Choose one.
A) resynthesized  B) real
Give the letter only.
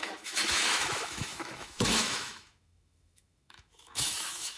A